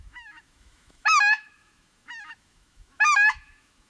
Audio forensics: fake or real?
fake